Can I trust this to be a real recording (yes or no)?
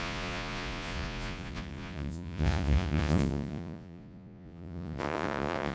no